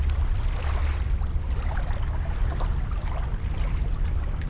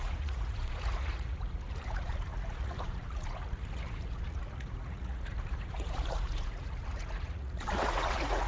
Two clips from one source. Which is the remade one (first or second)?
second